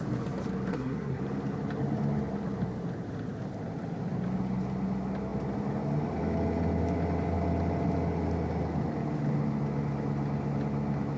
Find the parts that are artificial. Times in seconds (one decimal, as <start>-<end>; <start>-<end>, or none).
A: 0.7-1.2